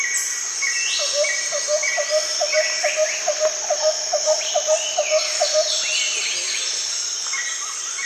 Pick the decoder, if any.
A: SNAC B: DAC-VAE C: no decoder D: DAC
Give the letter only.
C